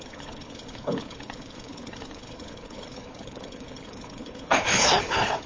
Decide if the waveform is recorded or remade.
remade